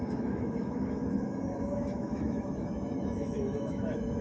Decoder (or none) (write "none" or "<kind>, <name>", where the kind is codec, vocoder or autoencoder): autoencoder, DAC-VAE